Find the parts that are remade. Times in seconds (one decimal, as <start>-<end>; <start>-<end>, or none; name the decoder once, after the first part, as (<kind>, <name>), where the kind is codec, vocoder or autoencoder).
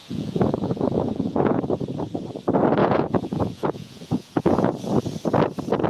0.0-1.6 (vocoder, Vocos); 2.8-4.7